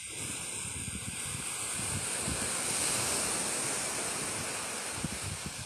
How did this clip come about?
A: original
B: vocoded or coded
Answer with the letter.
A